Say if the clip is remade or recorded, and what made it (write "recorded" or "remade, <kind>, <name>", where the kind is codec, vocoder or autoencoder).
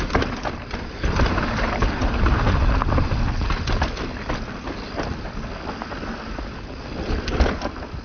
remade, vocoder, BigVGAN v2